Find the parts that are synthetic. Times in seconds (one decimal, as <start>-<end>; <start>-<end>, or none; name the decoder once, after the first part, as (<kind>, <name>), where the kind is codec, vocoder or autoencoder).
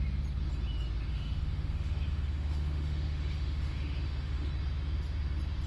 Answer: 1.1-4.5 (autoencoder, DAC-VAE)